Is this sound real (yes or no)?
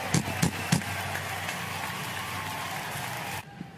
yes